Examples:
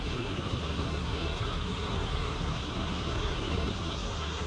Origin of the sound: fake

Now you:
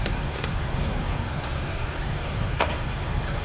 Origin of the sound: fake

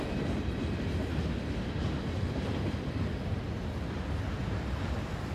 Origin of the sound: real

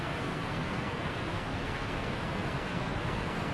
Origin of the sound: fake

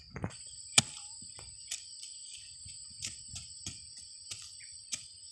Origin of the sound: real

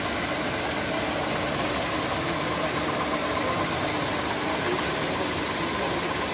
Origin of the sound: real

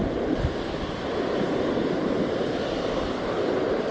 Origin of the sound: real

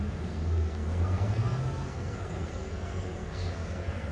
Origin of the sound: fake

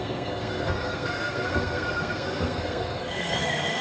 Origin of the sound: fake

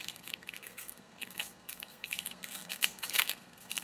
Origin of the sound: fake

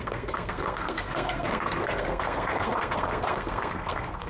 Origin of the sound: fake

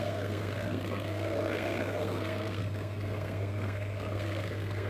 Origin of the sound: fake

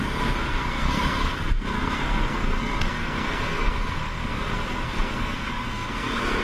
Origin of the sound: fake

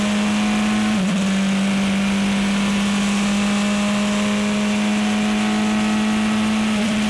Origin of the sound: real